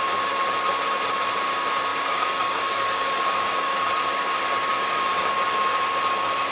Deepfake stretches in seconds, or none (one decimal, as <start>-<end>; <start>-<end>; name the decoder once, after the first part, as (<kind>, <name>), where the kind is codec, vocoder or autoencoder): 1.9-3.7 (codec, DAC); 4.7-5.3